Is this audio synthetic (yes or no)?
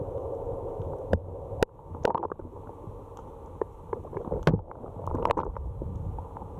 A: no